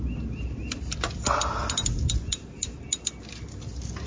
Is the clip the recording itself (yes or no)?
yes